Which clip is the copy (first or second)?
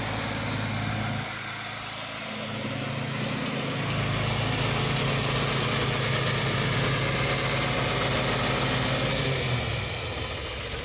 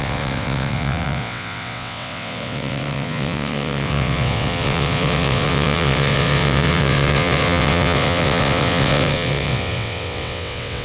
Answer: second